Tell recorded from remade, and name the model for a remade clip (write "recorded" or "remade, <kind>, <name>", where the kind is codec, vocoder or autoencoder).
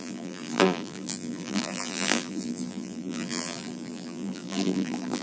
remade, vocoder, BigVGAN v2